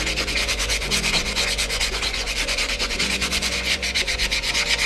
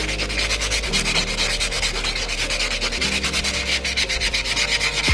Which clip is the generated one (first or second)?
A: first